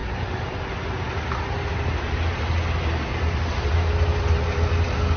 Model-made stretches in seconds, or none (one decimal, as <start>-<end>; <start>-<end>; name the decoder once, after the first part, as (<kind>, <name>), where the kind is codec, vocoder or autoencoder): none